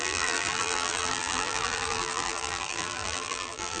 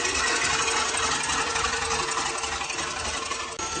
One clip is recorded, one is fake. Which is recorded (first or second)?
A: second